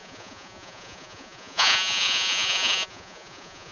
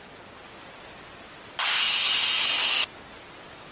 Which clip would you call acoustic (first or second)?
second